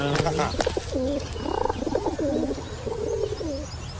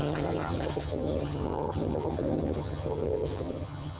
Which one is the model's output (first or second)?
second